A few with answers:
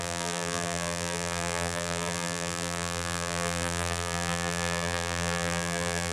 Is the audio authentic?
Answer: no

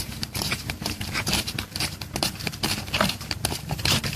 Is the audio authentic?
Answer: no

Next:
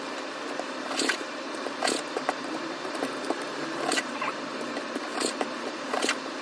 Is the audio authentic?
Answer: no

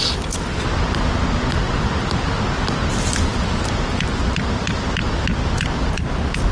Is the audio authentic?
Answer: yes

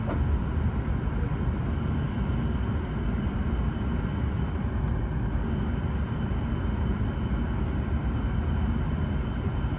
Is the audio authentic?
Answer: yes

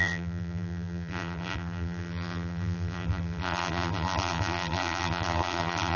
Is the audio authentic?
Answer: no